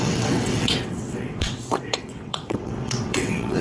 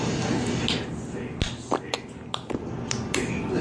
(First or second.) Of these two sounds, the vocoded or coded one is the first